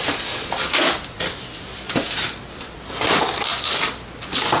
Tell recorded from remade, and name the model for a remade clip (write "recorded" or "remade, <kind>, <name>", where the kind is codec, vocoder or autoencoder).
recorded